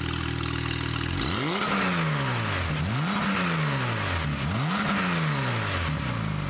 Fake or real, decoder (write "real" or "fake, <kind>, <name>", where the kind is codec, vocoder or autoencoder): real